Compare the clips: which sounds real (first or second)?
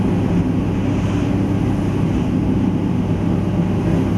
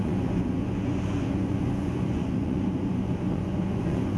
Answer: first